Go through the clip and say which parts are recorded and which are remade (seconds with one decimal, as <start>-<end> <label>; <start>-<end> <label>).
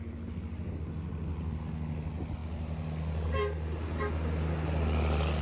0.0-5.4 recorded